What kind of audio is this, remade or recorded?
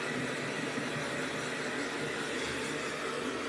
recorded